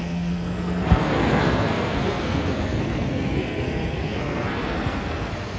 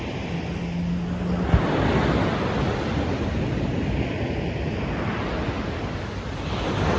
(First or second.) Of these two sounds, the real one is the second